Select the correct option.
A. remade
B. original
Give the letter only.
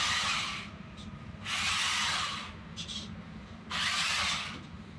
B